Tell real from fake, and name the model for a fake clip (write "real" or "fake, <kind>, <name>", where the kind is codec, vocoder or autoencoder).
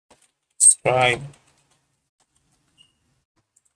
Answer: real